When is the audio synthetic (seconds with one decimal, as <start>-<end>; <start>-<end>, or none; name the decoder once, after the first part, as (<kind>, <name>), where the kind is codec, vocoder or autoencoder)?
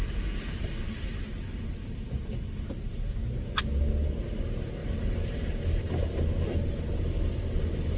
4.8-7.0 (vocoder, BigVGAN v2)